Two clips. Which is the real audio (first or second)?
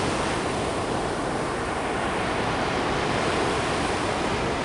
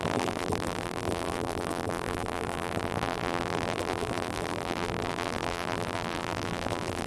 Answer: first